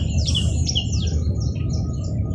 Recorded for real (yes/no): yes